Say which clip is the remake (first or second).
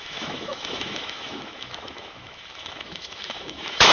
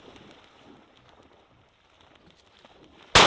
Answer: first